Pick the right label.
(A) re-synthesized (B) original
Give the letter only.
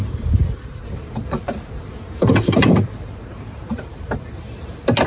A